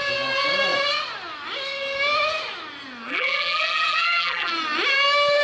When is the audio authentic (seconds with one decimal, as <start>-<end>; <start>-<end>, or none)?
0.0-3.1; 4.5-5.4

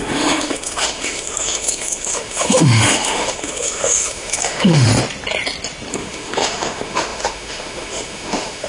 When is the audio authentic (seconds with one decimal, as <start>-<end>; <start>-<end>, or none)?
4.9-5.9

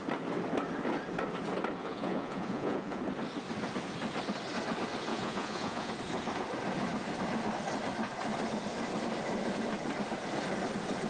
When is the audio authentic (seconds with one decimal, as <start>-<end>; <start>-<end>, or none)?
0.0-1.8; 3.0-5.1; 5.9-11.1

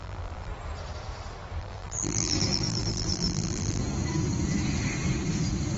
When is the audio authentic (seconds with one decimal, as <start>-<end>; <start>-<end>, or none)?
0.5-1.6; 3.8-5.8

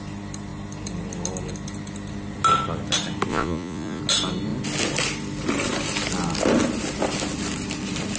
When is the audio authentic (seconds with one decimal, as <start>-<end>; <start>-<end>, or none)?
0.0-3.3; 4.0-8.2

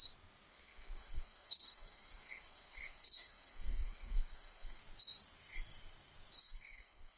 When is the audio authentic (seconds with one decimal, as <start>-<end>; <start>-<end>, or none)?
0.0-0.5; 4.8-6.4